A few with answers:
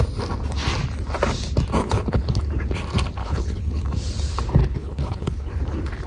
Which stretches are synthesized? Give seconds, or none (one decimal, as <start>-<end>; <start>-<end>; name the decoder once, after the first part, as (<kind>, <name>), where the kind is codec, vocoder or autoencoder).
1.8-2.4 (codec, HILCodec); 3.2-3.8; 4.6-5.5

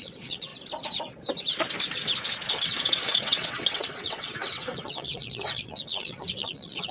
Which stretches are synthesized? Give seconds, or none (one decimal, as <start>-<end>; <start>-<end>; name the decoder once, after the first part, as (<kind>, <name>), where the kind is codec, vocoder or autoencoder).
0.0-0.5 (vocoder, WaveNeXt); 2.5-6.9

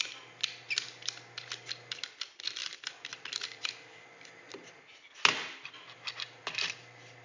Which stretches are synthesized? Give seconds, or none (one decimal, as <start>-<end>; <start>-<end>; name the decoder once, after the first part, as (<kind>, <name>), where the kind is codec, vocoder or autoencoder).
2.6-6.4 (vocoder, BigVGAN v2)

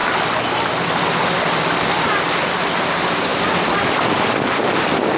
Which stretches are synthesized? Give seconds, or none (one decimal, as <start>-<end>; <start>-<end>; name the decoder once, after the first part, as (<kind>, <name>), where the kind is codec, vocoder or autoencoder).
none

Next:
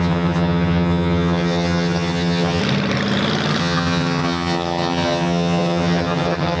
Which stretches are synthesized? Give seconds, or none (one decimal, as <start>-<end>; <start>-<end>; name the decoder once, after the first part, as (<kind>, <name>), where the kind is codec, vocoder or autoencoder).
0.0-2.6 (vocoder, HiFi-GAN); 3.6-6.6

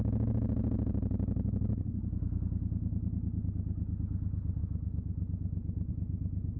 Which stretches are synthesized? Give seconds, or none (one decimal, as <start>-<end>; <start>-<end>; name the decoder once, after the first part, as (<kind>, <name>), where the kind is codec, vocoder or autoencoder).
none

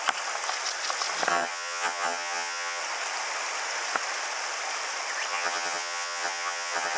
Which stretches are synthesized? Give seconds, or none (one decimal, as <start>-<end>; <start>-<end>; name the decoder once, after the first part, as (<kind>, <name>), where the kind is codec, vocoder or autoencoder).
1.3-2.8 (vocoder, HiFi-GAN); 5.3-7.0

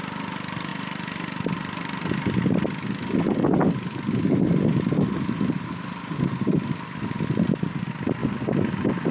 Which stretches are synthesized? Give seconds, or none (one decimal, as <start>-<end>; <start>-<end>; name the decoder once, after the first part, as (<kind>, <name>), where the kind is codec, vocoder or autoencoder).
none